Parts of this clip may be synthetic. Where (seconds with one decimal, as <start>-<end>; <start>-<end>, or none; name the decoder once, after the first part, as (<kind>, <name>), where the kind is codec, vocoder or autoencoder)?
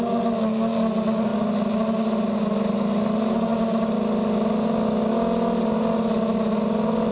none